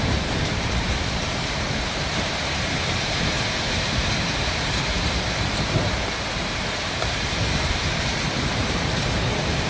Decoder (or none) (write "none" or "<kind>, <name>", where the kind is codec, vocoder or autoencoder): vocoder, BigVGAN v2